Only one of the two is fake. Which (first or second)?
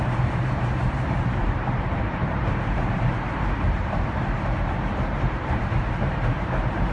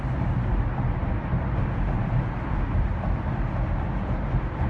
first